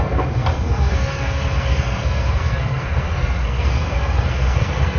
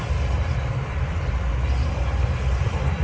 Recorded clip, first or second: second